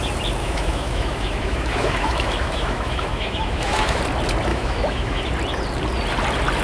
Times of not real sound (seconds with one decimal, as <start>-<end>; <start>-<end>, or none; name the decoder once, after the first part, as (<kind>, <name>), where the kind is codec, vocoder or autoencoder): 0.4-4.0 (autoencoder, DAC-VAE); 4.5-5.3